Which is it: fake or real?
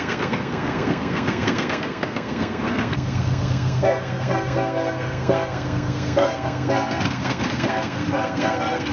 fake